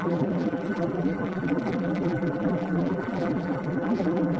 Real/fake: fake